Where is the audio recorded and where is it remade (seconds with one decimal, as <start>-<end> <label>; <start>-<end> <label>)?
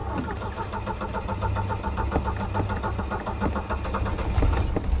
0.0-5.0 recorded